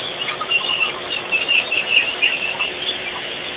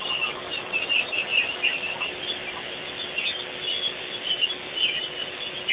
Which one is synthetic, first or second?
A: first